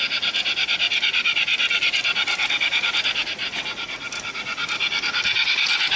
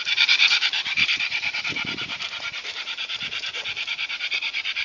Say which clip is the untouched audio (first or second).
first